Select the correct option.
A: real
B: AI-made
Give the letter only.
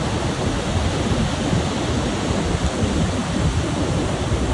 A